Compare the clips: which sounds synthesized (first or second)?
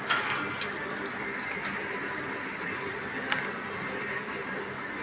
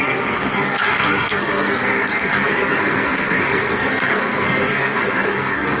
second